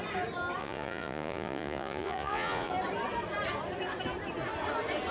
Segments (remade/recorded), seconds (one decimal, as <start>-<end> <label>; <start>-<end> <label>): 0.0-0.6 recorded; 0.6-2.7 remade; 2.7-5.1 recorded